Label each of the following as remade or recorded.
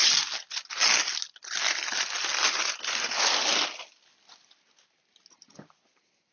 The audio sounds recorded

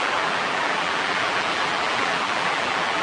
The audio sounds remade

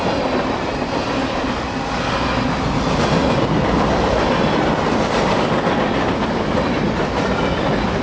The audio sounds recorded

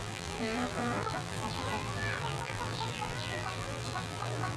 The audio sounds remade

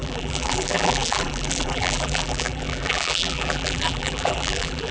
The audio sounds remade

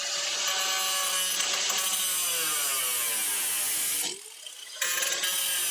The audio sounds recorded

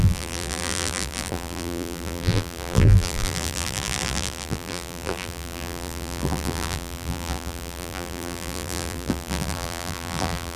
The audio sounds remade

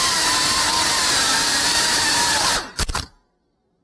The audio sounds remade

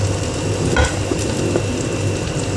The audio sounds remade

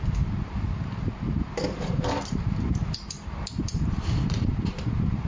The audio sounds remade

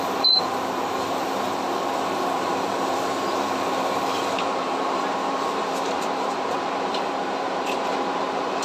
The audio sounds remade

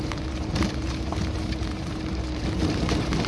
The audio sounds remade